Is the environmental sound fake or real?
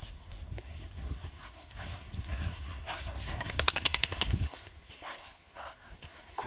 fake